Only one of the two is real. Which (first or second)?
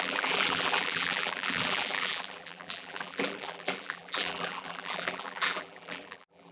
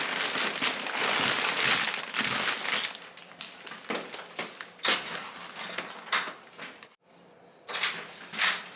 second